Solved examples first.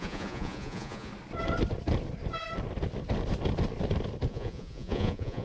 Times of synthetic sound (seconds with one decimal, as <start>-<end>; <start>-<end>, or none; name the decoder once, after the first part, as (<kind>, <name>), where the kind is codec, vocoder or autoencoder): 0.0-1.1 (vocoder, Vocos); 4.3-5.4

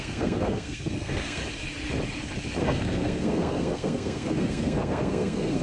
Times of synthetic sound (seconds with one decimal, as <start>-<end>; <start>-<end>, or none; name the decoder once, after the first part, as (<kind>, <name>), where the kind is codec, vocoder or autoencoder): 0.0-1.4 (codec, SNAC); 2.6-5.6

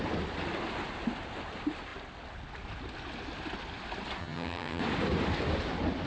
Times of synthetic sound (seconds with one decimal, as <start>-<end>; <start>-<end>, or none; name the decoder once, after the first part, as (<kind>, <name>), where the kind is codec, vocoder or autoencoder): 4.2-4.8 (vocoder, HiFi-GAN)

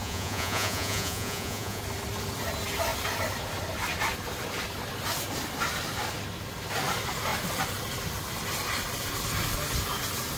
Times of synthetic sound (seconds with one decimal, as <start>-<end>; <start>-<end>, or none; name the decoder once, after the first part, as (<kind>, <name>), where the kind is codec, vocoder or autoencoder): 0.0-1.8 (vocoder, Vocos)

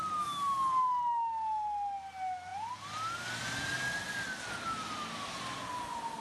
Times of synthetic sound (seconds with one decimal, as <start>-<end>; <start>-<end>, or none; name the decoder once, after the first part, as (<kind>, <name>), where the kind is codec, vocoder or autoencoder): none

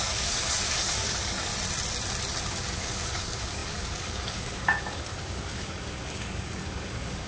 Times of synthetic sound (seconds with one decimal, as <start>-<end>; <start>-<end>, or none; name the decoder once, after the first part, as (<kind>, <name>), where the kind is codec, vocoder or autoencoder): 0.0-1.5 (codec, DAC); 2.5-7.3